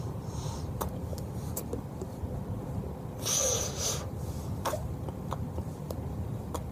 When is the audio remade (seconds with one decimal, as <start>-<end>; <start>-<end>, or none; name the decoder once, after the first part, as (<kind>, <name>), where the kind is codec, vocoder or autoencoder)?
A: 0.0-1.1 (vocoder, BigVGAN v2); 3.6-6.7